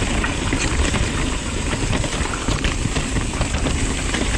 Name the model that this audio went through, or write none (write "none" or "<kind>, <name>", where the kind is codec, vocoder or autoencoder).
none